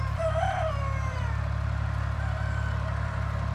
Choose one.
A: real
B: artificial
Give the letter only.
B